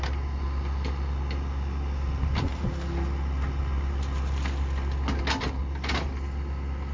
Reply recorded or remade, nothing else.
recorded